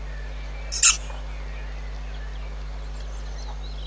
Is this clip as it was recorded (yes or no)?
yes